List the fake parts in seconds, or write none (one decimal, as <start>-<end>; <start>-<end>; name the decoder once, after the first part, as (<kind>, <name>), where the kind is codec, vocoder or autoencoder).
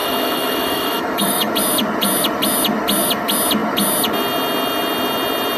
0.0-1.5 (autoencoder, DAC-VAE)